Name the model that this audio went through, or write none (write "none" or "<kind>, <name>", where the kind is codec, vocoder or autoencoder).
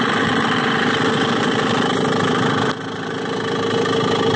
none